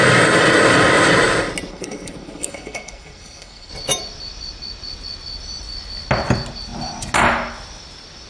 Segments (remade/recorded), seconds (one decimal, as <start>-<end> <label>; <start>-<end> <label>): 0.0-1.7 recorded; 1.7-3.7 remade; 3.7-8.3 recorded